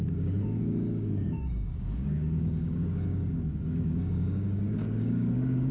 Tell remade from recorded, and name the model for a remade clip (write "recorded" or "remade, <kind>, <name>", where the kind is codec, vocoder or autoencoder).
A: remade, codec, DAC